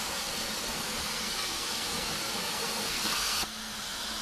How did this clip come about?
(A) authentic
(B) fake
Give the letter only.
B